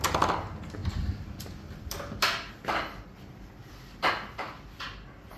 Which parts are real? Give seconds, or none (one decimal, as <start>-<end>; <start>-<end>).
0.0-5.4